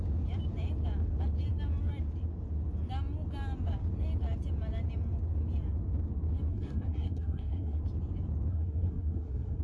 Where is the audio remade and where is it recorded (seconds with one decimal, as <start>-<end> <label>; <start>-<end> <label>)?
0.0-6.5 recorded; 6.5-7.8 remade; 7.8-8.5 recorded; 8.5-9.6 remade